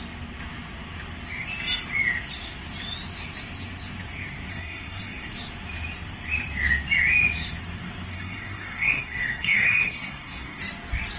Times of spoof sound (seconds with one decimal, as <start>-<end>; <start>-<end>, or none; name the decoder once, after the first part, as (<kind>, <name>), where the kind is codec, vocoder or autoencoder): 4.5-5.3 (codec, SNAC); 8.1-10.6

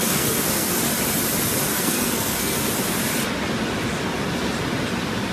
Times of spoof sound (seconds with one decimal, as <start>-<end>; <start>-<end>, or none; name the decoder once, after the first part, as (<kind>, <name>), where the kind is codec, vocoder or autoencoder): 0.0-0.7 (codec, SNAC); 1.7-2.6

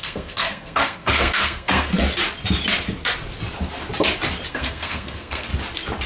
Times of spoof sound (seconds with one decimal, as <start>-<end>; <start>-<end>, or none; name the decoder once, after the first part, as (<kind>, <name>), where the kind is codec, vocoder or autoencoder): 0.0-1.9 (codec, SNAC); 4.5-5.5

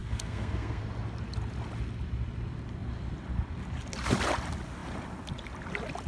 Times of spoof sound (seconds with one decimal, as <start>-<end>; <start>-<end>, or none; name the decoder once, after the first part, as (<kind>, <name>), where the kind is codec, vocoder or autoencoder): 0.0-0.8 (codec, SNAC)

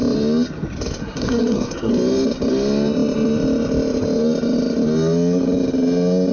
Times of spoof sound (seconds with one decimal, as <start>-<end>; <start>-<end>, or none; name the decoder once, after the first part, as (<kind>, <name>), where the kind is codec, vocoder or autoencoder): 1.0-1.9 (codec, SNAC)

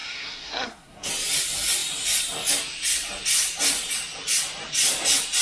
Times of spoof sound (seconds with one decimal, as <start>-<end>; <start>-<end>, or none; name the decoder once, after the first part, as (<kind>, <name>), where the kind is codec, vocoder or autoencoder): 0.0-1.1 (codec, SNAC)